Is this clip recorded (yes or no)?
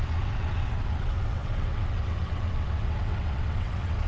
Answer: no